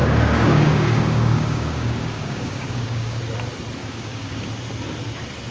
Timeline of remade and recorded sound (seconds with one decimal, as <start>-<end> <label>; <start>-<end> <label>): 0.0-3.2 remade; 3.2-3.8 recorded; 3.8-4.4 remade; 4.4-5.5 recorded